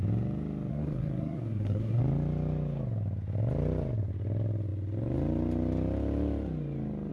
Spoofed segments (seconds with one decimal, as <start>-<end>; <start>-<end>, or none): 0.7-2.0